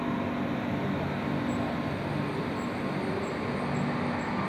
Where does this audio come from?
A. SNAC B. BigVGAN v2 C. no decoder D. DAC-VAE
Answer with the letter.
C